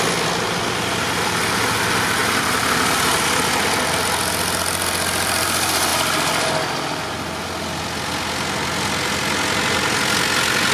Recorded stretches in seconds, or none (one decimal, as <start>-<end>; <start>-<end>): 0.0-2.2; 3.2-10.7